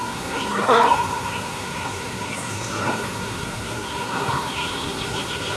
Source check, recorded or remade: remade